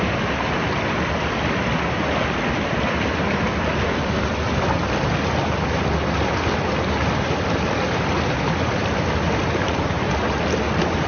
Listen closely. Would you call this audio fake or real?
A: real